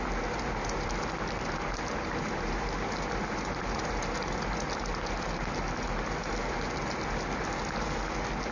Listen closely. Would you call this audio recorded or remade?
recorded